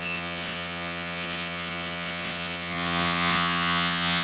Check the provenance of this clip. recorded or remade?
remade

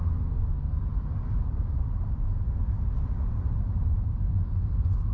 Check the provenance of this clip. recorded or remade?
recorded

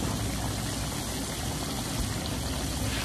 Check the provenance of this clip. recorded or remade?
recorded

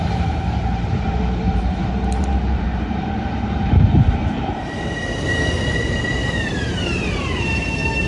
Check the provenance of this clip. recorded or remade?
remade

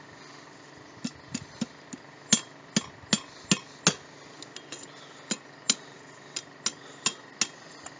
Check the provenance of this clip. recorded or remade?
recorded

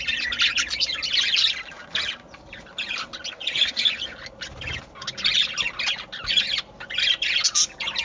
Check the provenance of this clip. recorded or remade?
recorded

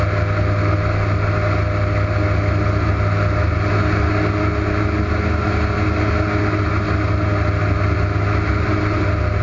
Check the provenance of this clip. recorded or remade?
recorded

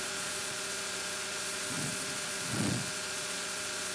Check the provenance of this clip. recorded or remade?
remade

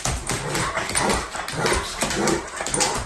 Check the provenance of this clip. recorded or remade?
recorded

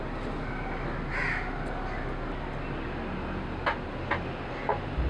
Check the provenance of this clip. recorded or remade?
recorded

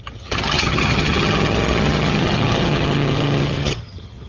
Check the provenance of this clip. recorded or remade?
remade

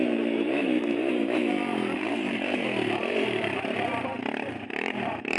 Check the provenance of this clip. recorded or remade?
remade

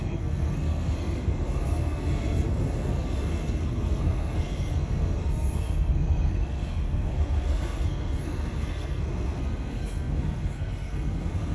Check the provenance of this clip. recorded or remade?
remade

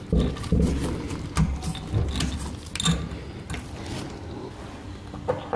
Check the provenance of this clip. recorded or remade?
recorded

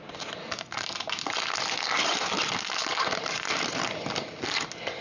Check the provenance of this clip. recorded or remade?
recorded